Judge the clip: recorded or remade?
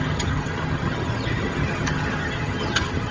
remade